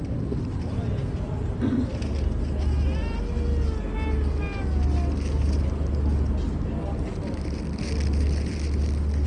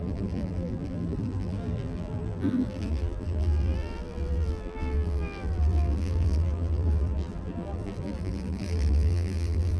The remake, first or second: second